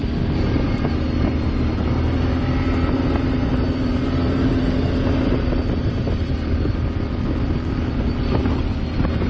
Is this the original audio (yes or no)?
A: yes